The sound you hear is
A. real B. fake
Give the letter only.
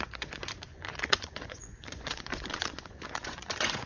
B